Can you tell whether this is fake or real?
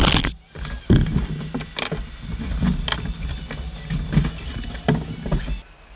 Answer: real